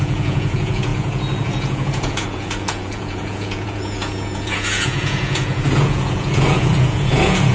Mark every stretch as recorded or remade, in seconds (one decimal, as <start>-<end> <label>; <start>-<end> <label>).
0.0-7.5 remade